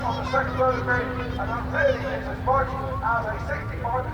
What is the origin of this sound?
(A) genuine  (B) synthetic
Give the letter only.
A